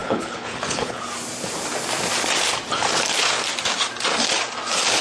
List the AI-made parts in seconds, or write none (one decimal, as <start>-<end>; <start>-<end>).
0.0-1.0